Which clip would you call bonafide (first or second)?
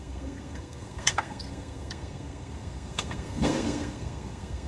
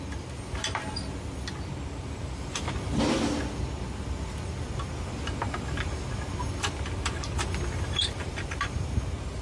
second